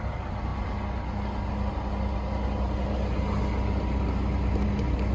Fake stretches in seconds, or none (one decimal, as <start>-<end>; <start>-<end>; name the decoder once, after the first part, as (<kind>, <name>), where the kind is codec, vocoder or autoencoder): none